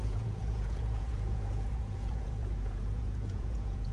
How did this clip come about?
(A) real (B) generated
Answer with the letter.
B